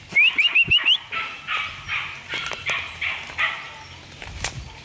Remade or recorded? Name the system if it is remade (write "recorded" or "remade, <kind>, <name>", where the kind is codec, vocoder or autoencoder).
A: recorded